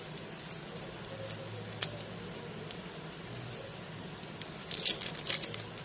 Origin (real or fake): real